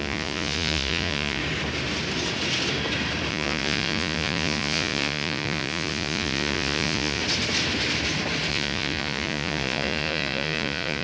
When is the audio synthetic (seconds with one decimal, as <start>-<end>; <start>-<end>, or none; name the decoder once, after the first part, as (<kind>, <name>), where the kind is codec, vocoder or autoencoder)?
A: 0.0-1.4 (vocoder, Vocos); 3.3-7.2; 8.5-11.0